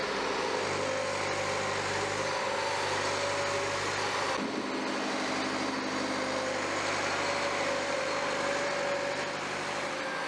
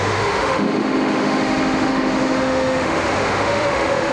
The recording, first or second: first